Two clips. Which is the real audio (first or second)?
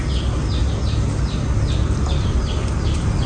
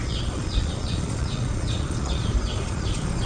first